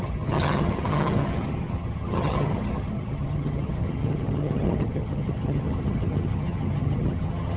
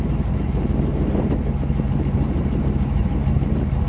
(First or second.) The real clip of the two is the second